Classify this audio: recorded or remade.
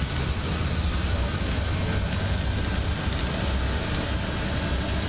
recorded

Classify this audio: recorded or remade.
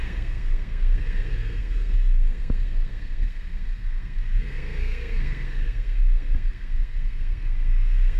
remade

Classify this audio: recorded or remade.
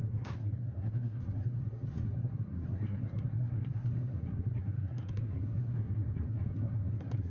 remade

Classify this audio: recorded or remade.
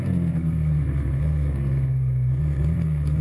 remade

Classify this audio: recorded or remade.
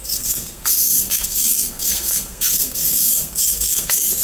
remade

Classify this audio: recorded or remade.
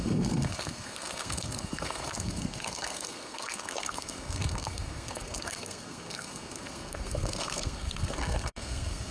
remade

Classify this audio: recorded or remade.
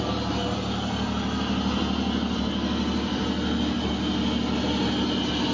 recorded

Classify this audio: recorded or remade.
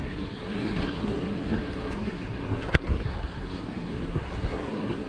remade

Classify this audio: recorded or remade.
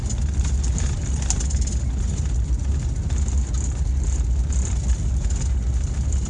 recorded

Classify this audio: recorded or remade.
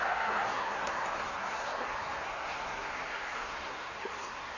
remade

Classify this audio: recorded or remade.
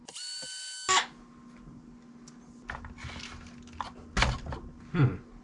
recorded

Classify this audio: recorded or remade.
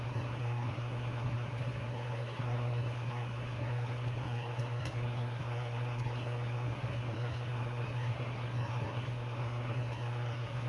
remade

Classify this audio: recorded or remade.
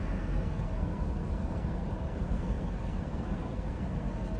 remade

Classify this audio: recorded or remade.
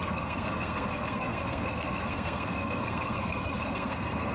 remade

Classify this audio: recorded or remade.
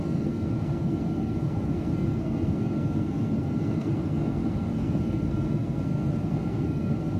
remade